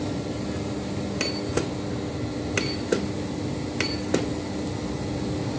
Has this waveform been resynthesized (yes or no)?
no